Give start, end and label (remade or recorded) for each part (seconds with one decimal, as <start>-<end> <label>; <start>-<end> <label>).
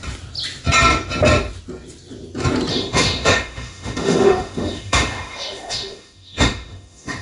0.0-2.7 recorded; 2.7-7.2 remade